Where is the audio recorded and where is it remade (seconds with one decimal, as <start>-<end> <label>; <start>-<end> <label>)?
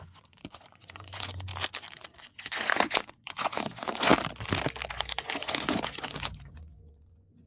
0.0-1.5 remade; 1.5-2.2 recorded; 2.2-4.1 remade; 4.1-4.9 recorded; 4.9-7.5 remade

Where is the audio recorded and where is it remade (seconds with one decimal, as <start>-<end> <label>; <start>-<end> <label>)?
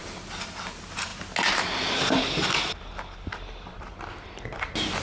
0.0-5.0 recorded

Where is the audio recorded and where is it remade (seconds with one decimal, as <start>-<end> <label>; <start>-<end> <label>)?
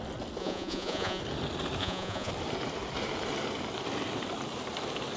0.0-0.4 recorded; 0.4-1.2 remade; 1.2-1.8 recorded; 1.8-2.3 remade; 2.3-5.2 recorded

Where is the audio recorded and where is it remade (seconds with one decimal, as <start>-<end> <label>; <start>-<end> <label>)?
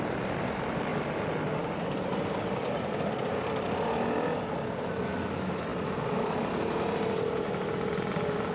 0.0-8.5 recorded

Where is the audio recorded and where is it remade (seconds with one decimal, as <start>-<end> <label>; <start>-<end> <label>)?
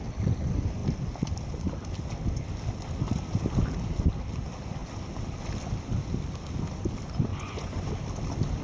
0.0-7.3 recorded; 7.3-7.9 remade; 7.9-8.6 recorded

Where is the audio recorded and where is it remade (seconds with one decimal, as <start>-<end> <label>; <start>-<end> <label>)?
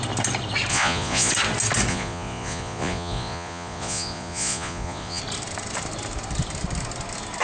0.0-0.7 recorded; 0.7-1.3 remade; 1.3-1.9 recorded; 1.9-5.2 remade; 5.2-7.4 recorded